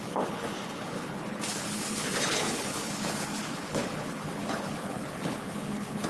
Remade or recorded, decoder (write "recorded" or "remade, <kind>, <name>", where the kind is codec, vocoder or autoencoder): remade, codec, HILCodec